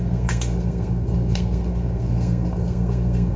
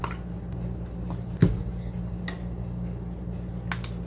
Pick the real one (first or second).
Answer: second